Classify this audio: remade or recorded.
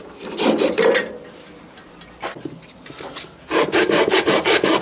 recorded